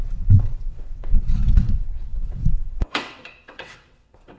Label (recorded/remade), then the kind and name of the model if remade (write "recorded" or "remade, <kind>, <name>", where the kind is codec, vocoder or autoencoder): remade, vocoder, WaveNeXt